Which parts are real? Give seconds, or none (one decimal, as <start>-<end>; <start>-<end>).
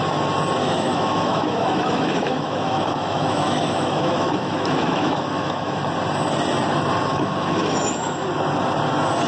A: 0.0-0.6; 5.8-7.1; 8.3-9.3